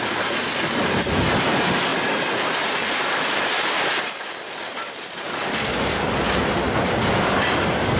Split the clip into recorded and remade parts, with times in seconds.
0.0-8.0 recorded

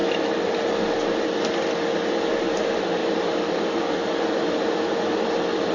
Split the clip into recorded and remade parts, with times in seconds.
0.0-5.7 recorded

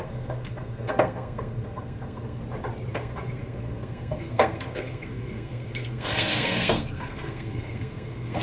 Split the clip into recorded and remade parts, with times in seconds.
0.0-2.4 remade; 2.4-2.9 recorded; 2.9-8.4 remade

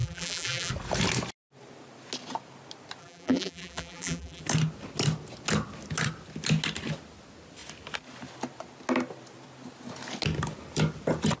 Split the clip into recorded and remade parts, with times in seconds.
0.0-0.7 remade; 0.7-3.0 recorded; 3.0-4.4 remade; 4.4-11.4 recorded

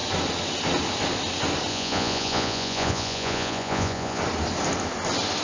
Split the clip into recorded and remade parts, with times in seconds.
0.0-1.7 recorded; 1.7-4.2 remade; 4.2-5.4 recorded

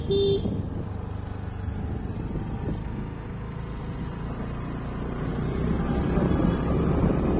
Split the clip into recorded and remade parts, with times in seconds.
0.0-2.8 recorded; 2.8-3.6 remade; 3.6-7.4 recorded

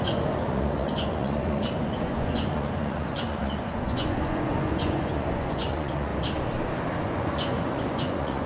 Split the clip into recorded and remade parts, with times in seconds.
0.0-6.1 remade; 6.1-7.0 recorded; 7.0-8.5 remade

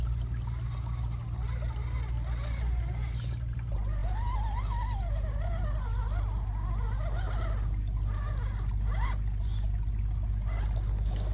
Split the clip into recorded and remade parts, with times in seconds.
0.0-11.3 recorded